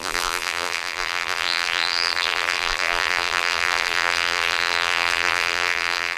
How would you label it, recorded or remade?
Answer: remade